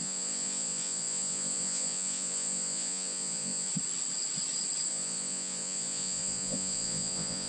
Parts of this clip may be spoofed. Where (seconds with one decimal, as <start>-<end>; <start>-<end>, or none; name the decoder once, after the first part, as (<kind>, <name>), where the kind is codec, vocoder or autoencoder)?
0.0-3.7 (vocoder, Vocos); 4.9-7.5